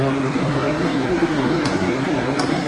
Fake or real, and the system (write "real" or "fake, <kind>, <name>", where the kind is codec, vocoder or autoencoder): fake, codec, SNAC